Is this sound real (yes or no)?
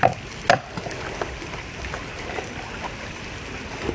yes